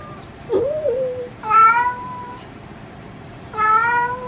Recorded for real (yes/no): no